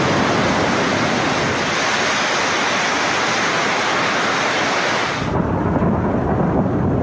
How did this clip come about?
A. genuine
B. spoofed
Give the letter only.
A